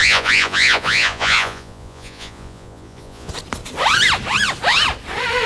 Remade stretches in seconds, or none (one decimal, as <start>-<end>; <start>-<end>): 0.0-3.3